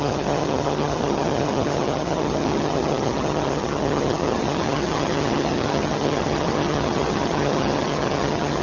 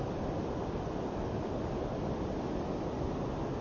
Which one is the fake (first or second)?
first